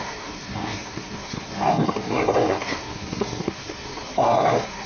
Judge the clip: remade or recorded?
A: remade